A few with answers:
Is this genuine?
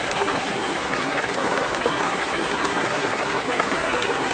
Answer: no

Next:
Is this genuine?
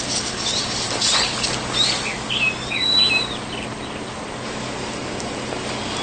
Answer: yes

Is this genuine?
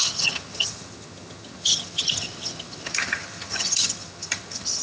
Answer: no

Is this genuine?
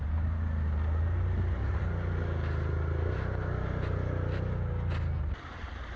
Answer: yes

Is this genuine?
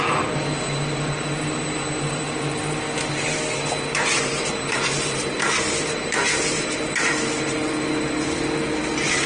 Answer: yes